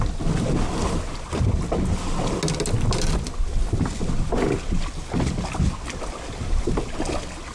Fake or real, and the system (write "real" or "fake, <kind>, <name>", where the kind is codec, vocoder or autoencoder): real